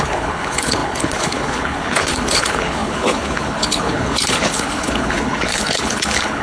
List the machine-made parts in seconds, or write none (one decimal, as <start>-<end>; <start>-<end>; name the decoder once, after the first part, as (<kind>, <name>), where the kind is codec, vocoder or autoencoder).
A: 0.0-6.4 (codec, HILCodec)